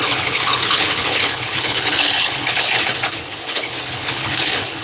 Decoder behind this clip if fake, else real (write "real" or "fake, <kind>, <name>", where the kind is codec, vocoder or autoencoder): fake, codec, HILCodec